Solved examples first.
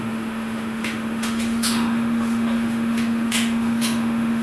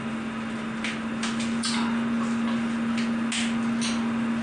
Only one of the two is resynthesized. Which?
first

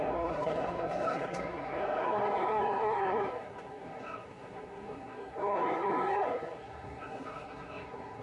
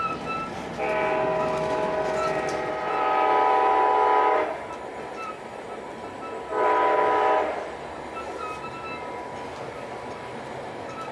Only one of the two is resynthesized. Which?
first